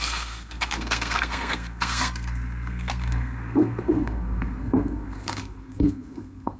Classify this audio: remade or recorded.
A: remade